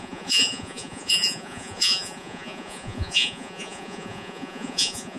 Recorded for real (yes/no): no